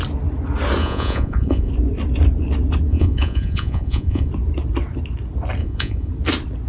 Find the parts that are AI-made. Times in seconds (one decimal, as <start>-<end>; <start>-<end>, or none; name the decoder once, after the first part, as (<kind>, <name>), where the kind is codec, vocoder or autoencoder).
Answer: 0.8-1.7 (vocoder, Vocos); 2.9-4.3; 5.6-6.1